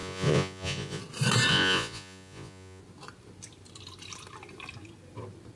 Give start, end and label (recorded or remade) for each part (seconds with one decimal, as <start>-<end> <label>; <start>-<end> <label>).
0.0-1.0 remade; 1.0-1.5 recorded; 1.5-2.8 remade; 2.8-5.6 recorded